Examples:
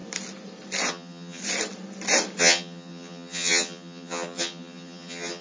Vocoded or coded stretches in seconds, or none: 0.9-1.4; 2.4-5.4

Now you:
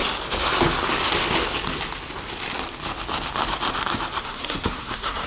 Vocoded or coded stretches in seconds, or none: 4.2-5.3

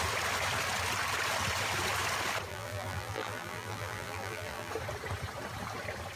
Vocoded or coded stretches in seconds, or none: 2.5-4.7